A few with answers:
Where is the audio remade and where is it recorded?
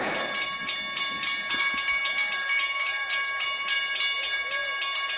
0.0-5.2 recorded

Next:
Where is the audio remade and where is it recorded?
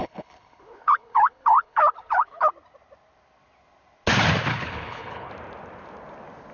0.0-2.5 remade; 2.5-4.5 recorded; 4.5-5.3 remade; 5.3-6.5 recorded